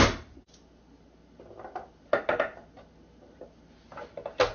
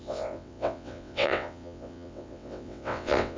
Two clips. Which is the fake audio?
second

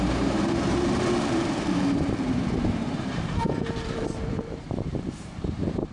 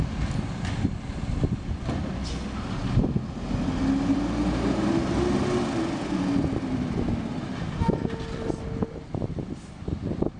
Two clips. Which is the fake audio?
first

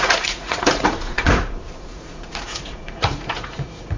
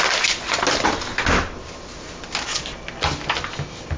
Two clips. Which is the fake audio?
first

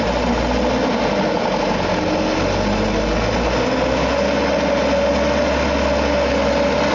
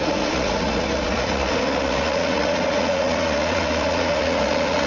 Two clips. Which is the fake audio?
second